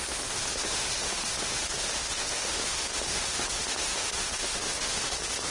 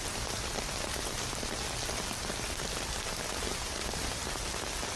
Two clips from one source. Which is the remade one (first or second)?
first